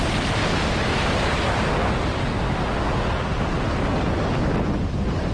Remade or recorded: recorded